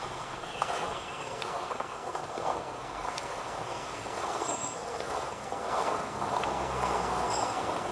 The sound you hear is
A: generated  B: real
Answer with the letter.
A